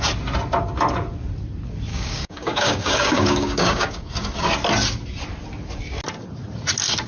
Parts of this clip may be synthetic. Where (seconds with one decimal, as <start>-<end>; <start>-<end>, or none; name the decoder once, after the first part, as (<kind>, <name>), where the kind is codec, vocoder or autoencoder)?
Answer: 1.9-4.1 (codec, DAC)